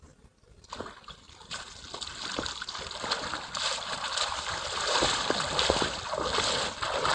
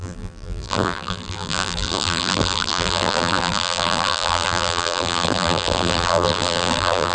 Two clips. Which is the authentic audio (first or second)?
first